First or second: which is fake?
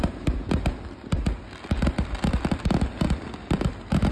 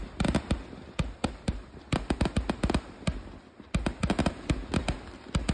first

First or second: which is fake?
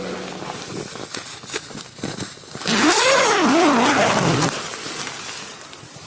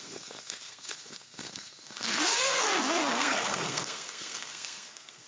second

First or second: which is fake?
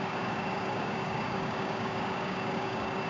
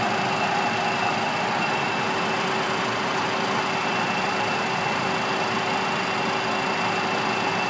first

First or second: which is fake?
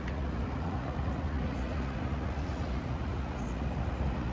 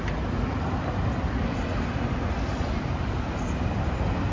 first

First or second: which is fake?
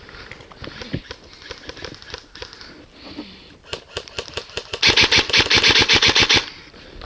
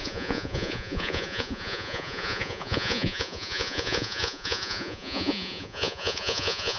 second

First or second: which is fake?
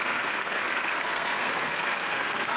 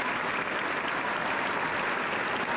first